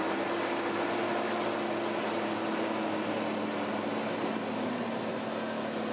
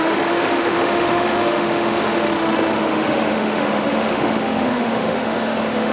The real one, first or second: first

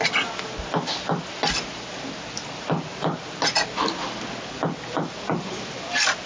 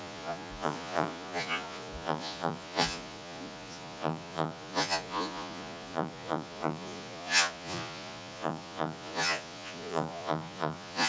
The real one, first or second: first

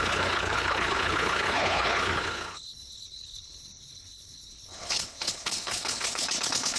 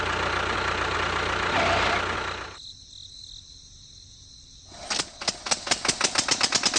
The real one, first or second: second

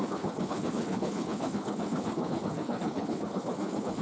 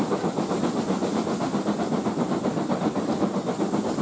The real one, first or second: second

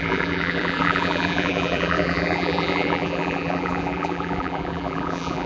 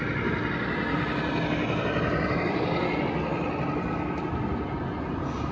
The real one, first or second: second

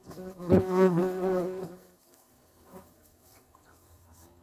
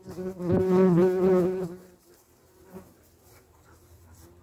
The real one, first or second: second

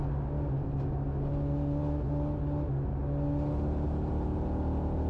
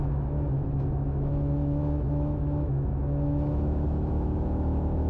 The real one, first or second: first